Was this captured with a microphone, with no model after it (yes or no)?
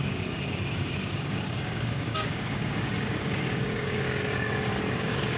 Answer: no